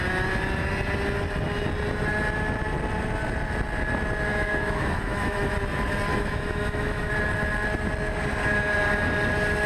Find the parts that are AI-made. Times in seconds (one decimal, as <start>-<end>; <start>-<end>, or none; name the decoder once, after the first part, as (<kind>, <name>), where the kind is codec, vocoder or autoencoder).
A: 4.3-5.5 (autoencoder, DAC-VAE); 6.1-7.1